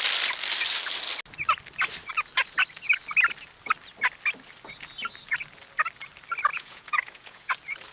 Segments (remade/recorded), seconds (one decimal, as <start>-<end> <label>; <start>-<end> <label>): 0.0-6.5 recorded; 6.5-7.5 remade; 7.5-7.9 recorded